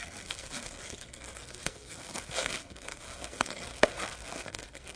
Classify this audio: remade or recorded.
remade